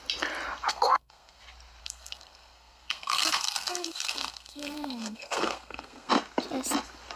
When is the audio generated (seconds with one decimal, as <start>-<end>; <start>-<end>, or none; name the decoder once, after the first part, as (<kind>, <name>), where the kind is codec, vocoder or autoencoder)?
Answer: 0.7-1.4 (codec, SNAC); 1.8-6.1

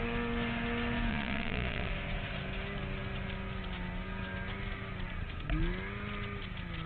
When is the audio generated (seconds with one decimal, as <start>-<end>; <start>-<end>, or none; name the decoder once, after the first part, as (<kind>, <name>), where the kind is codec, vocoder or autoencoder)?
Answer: 1.1-1.9 (vocoder, Vocos)

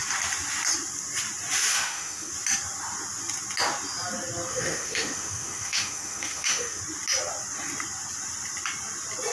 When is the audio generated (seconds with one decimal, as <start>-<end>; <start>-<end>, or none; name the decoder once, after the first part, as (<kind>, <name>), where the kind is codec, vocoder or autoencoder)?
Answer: 1.7-2.3 (autoencoder, DAC-VAE); 4.5-6.8

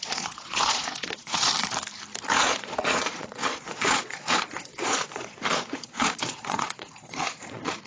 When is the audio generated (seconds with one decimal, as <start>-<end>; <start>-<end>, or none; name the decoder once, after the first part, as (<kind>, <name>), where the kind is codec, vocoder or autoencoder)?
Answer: 0.0-1.5 (vocoder, Vocos); 2.4-7.9

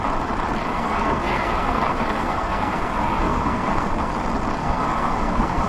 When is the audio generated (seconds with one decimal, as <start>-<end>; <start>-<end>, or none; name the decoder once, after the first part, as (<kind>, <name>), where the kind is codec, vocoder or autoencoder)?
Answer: 0.7-4.1 (codec, SNAC); 4.6-5.7